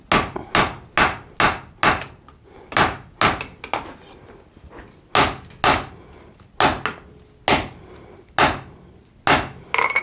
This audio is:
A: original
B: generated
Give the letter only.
A